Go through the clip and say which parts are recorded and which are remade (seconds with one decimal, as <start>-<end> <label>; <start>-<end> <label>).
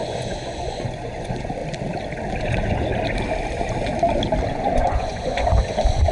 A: 0.0-1.6 remade; 1.6-2.4 recorded; 2.4-2.9 remade; 2.9-4.5 recorded; 4.5-6.1 remade